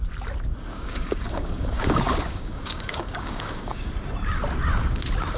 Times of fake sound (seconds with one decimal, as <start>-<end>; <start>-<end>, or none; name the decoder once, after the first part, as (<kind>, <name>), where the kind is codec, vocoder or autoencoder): 0.7-3.9 (codec, DAC)